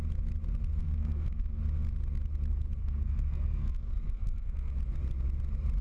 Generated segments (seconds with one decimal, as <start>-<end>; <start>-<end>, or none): 0.8-1.6; 2.8-4.7